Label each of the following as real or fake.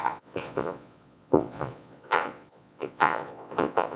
fake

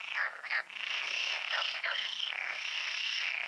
fake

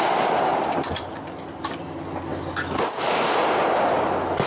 real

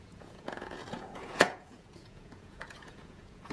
fake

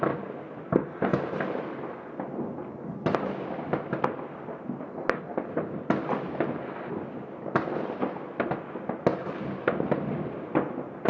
real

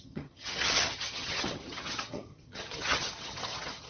fake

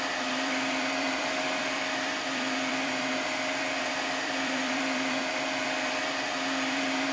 fake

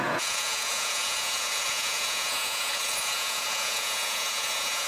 fake